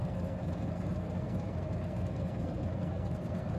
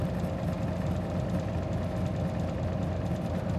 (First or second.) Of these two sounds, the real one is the second